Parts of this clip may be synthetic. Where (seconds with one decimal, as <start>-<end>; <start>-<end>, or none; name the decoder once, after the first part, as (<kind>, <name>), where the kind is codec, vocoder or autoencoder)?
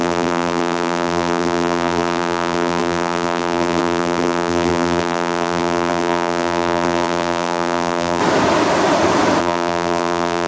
0.0-8.2 (vocoder, BigVGAN v2); 9.4-10.5